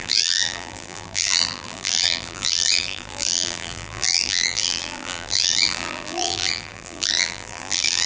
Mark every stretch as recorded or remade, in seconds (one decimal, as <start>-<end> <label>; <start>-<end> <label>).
0.0-8.1 remade